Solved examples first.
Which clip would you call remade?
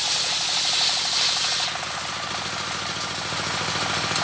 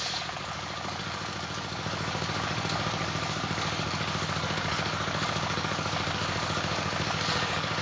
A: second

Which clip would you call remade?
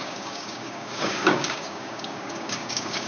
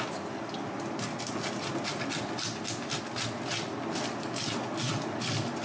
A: first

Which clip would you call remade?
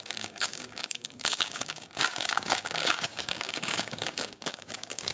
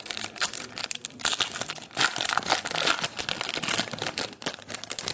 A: first